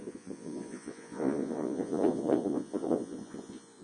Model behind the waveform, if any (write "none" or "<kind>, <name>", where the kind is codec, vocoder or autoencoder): vocoder, Vocos